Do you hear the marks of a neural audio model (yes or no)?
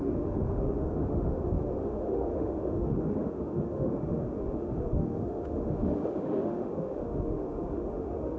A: yes